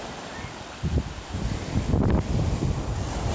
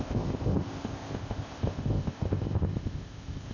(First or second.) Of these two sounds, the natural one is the first